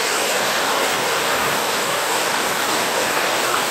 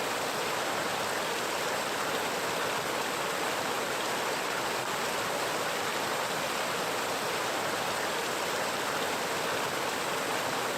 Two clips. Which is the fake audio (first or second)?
first